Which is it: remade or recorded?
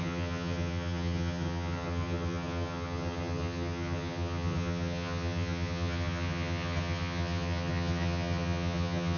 remade